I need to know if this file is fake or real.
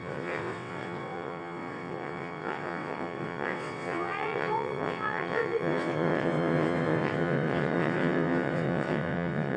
fake